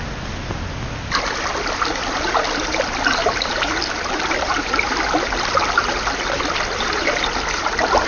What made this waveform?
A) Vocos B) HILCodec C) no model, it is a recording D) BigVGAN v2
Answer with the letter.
C